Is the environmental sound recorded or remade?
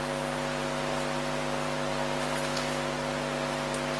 recorded